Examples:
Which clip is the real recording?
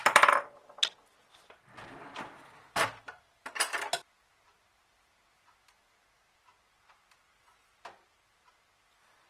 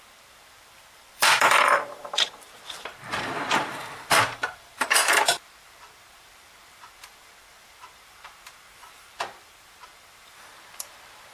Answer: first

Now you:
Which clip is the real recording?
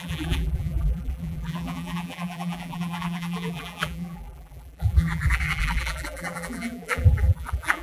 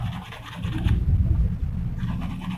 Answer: second